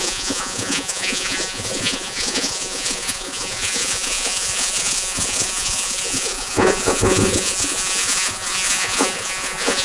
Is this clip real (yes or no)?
no